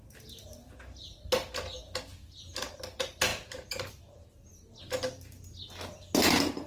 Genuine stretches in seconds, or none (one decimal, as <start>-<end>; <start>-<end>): 0.0-6.7